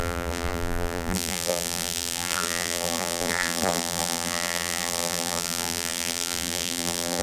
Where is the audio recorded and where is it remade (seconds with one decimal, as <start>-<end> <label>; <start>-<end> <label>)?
0.0-7.2 remade